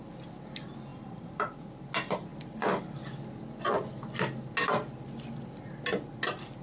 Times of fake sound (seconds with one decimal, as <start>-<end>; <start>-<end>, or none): 0.9-1.6; 2.3-2.8